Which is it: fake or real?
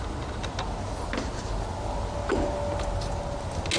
real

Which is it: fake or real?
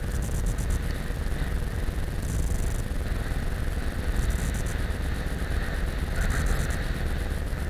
real